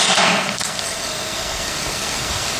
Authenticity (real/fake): fake